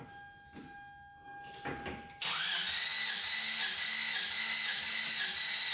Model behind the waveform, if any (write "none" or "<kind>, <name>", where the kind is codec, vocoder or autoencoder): none